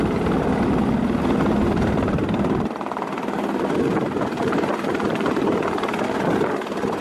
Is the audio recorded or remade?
recorded